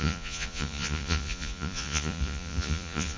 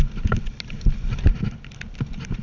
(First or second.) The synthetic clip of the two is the first